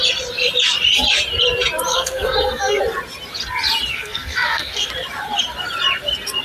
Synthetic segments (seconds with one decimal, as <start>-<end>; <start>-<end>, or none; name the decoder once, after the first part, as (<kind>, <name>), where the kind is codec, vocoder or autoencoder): 1.9-2.8 (codec, SNAC); 3.9-4.9